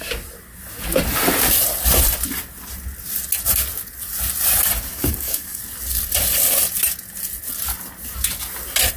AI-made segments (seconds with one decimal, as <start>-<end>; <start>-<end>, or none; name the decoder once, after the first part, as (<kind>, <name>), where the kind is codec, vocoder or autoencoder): 4.9-5.6 (codec, DAC)

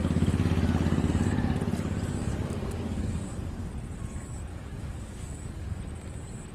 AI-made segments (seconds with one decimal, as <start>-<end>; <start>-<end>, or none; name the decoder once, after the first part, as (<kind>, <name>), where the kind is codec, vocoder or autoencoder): 2.2-3.7 (codec, DAC); 4.5-5.8

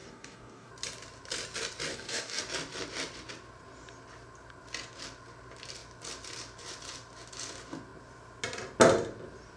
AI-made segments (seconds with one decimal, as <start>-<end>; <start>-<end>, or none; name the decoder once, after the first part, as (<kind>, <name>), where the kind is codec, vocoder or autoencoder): 0.0-0.7 (codec, DAC); 1.9-2.4